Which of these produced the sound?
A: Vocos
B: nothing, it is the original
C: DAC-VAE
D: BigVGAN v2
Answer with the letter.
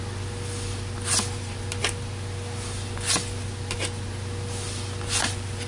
B